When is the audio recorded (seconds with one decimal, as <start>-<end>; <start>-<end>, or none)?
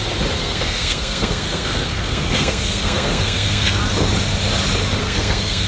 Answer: 0.0-0.4; 3.8-5.0